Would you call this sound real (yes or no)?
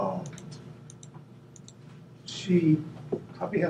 yes